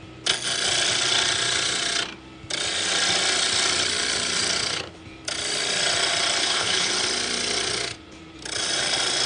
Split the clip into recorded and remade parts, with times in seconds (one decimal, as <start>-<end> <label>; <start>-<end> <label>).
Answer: 0.0-6.4 recorded; 6.4-6.9 remade; 6.9-9.3 recorded